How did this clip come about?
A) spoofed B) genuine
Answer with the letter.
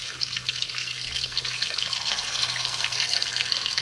A